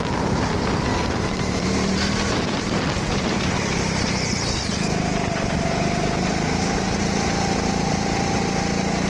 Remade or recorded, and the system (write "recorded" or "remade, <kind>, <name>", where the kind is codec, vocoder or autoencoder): remade, vocoder, BigVGAN v2